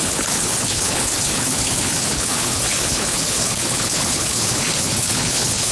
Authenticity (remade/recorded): remade